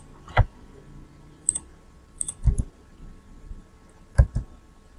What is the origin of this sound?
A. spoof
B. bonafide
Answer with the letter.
B